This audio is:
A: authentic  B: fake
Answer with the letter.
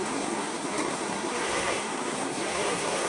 B